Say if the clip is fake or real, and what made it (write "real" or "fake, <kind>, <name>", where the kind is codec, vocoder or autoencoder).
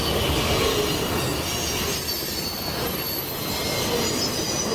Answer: real